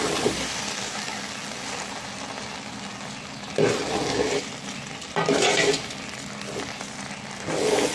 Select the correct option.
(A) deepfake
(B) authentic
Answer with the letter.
B